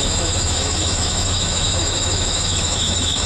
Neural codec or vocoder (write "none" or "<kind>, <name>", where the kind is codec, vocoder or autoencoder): autoencoder, DAC-VAE